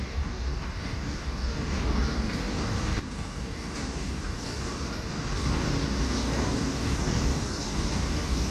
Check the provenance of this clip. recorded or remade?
remade